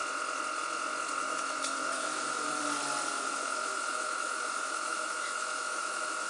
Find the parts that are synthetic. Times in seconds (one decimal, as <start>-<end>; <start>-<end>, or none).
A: 1.2-2.6; 3.1-6.3